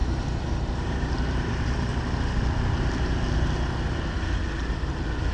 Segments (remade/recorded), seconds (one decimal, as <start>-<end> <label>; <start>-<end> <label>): 0.0-1.9 remade; 1.9-5.3 recorded